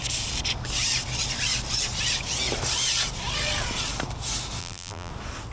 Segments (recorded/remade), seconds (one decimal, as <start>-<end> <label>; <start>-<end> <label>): 0.0-4.6 recorded; 4.6-5.1 remade; 5.1-5.5 recorded